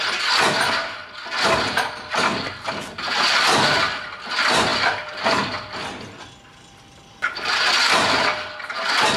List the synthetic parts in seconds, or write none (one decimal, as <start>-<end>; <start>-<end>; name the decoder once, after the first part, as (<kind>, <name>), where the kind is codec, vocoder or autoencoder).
4.7-7.6 (vocoder, BigVGAN v2)